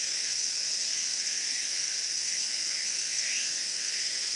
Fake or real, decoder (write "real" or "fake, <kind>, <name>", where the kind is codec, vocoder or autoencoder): fake, codec, SNAC